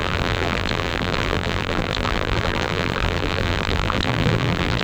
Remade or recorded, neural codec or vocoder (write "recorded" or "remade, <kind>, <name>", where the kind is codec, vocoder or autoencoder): remade, vocoder, BigVGAN v2